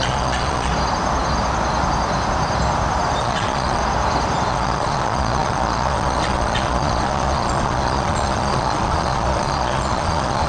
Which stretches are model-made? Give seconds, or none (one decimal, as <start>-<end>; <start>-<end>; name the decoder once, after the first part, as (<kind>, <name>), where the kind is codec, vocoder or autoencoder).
0.0-0.7 (vocoder, Vocos); 3.2-3.8; 4.5-10.5